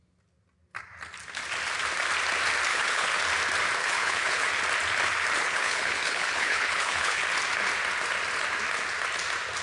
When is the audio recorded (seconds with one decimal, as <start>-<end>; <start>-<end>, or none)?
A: 0.0-2.7; 3.2-3.8; 4.5-5.4; 7.2-9.6